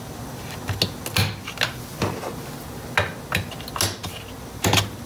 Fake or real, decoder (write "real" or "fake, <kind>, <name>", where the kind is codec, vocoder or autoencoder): real